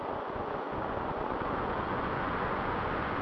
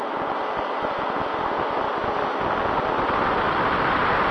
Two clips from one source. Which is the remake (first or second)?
first